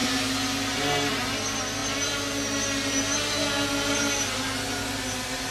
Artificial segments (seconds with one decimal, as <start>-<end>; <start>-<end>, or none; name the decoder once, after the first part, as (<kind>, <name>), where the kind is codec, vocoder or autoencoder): none

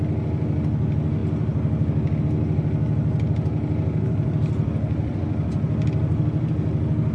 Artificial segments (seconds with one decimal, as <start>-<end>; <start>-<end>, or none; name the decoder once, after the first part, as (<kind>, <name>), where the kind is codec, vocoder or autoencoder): 3.5-6.5 (vocoder, BigVGAN v2)

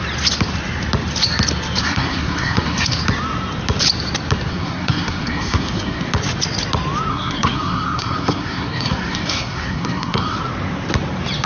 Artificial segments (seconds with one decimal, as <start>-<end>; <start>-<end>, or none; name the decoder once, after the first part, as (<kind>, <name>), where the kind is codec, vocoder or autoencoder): 1.8-3.0 (codec, SNAC); 4.5-6.1; 7.1-10.4

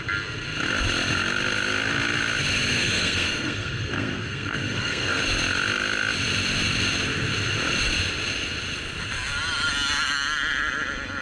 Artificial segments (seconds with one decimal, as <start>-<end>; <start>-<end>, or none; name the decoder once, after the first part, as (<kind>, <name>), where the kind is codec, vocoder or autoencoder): 2.7-5.2 (codec, SNAC)

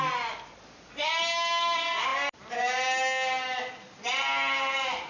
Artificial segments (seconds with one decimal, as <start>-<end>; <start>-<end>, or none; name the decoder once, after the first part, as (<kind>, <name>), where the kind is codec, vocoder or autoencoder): none

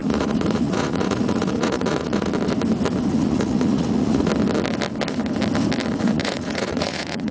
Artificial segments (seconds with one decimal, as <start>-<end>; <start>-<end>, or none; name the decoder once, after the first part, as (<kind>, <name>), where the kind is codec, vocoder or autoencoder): 0.0-2.3 (vocoder, Vocos); 3.1-4.3; 6.0-7.3

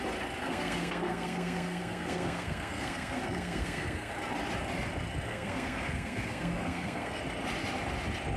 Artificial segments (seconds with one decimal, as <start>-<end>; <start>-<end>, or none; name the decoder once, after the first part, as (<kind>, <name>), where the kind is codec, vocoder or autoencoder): 0.4-4.1 (codec, SNAC); 5.3-7.2

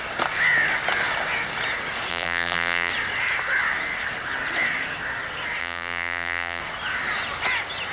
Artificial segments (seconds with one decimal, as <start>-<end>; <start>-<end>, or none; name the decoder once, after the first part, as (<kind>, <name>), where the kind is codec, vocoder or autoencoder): 2.1-2.9 (vocoder, BigVGAN v2); 5.6-6.6